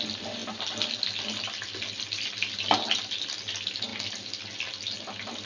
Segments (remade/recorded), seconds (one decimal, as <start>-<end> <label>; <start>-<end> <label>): 0.0-5.5 recorded